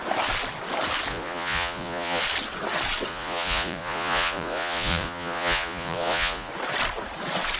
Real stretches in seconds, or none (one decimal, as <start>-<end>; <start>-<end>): 0.0-1.1; 2.2-3.1; 6.5-7.6